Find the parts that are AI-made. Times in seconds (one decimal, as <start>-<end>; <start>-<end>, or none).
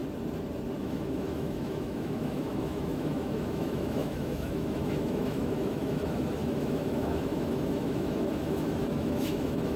0.8-9.8